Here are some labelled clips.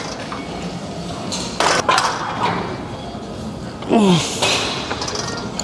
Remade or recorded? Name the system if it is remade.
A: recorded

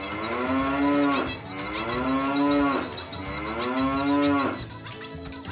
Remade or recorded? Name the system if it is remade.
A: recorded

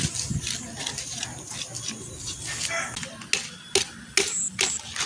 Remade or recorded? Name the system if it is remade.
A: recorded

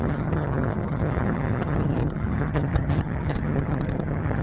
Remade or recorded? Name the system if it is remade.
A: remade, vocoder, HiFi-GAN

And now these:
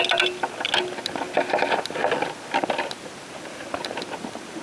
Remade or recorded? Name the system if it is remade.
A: recorded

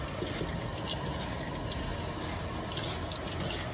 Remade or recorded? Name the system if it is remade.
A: recorded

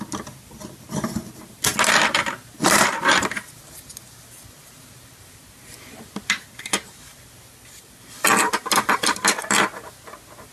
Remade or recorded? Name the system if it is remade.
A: recorded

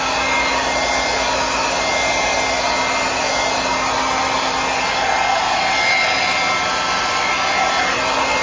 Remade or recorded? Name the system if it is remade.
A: recorded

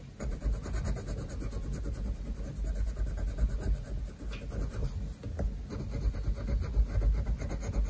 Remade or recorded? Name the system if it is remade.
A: recorded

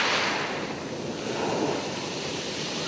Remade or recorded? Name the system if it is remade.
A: recorded